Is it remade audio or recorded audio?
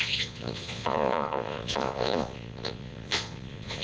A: remade